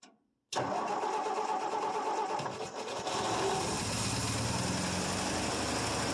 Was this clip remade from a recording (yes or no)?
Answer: no